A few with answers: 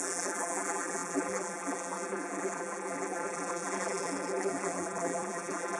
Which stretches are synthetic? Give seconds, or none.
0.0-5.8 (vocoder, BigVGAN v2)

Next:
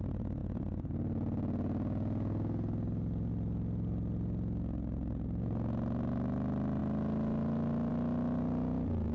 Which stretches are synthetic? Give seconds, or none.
none

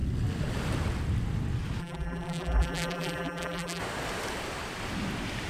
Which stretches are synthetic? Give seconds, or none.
1.8-3.8 (vocoder, BigVGAN v2)

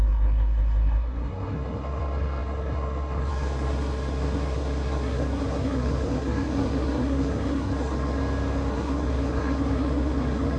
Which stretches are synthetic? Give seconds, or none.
0.0-8.2 (codec, SNAC); 8.7-10.6

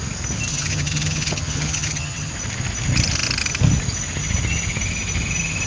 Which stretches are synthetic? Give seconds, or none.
0.5-2.3 (vocoder, HiFi-GAN)

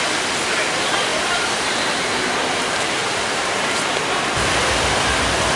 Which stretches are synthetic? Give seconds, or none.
1.1-1.7 (vocoder, BigVGAN v2); 3.0-4.0